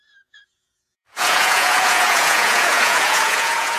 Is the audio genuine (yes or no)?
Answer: no